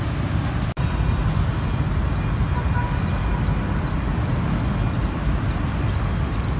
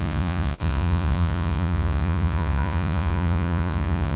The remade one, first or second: second